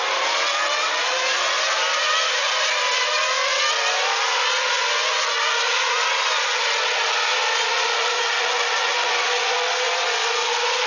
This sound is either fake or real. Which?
real